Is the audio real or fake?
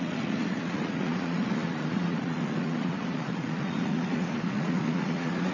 fake